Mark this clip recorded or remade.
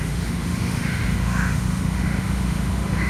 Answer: remade